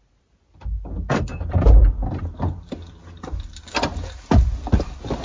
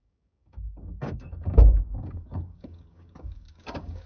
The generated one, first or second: second